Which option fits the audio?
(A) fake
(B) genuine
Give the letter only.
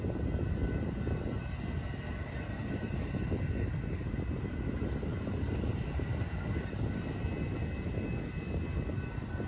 B